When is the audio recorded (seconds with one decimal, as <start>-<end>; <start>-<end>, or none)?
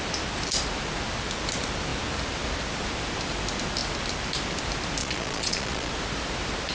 0.0-5.0; 5.9-6.7